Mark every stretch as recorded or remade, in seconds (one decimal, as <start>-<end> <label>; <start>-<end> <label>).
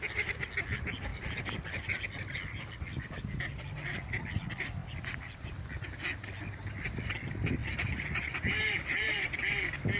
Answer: 0.0-1.1 recorded; 1.1-3.2 remade; 3.2-7.6 recorded; 7.6-9.6 remade; 9.6-10.0 recorded